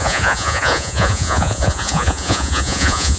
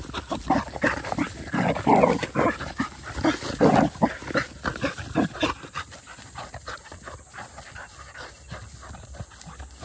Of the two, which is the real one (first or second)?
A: second